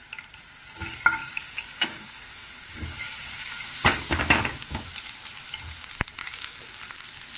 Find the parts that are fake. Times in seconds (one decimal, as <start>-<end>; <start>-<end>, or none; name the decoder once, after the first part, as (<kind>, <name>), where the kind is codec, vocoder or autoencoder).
1.2-4.9 (codec, DAC); 6.2-6.8